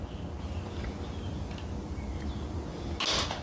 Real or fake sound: real